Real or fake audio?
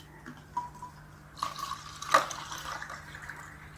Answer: real